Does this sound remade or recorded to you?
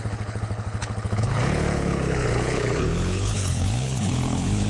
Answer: remade